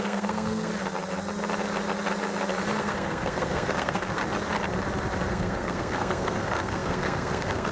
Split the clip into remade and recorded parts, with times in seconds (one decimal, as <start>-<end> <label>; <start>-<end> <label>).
0.0-0.7 remade; 0.7-2.8 recorded; 2.8-4.2 remade; 4.2-5.3 recorded; 5.3-7.7 remade